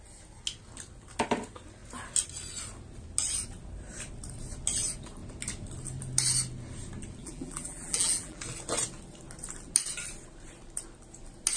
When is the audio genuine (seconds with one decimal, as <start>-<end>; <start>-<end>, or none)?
0.0-7.2; 8.4-11.6

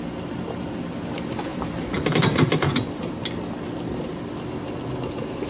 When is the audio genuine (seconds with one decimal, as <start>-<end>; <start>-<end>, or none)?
0.0-1.5; 3.2-5.5